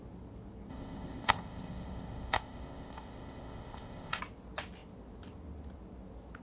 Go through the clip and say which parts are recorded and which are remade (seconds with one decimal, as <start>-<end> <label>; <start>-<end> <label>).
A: 0.0-0.7 recorded; 0.7-4.2 remade; 4.2-6.4 recorded